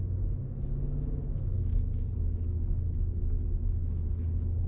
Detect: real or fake real